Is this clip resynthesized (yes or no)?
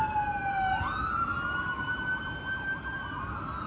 no